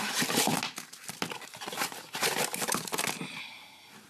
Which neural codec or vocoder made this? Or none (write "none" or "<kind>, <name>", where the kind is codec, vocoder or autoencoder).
none